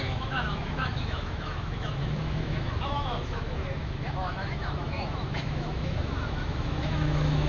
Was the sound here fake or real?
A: fake